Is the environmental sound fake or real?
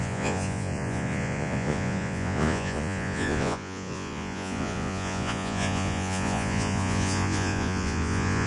fake